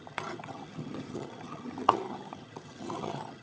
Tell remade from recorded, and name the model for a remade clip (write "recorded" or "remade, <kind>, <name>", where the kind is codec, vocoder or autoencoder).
remade, vocoder, HiFi-GAN